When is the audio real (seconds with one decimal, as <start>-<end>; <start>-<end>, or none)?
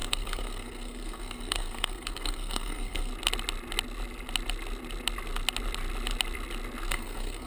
3.1-6.9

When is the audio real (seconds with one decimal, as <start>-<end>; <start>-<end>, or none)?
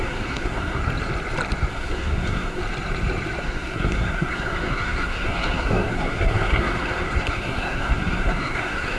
0.8-1.7; 2.6-3.4